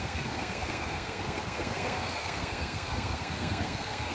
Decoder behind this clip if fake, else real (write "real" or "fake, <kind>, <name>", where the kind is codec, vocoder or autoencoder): fake, codec, SNAC